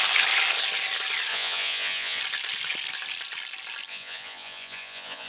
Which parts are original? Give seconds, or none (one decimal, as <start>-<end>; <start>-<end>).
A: 0.0-1.3; 2.2-3.9